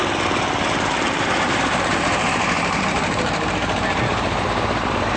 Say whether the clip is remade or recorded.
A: remade